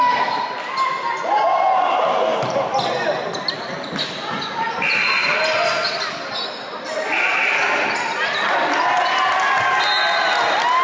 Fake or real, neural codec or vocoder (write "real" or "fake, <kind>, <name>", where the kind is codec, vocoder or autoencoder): real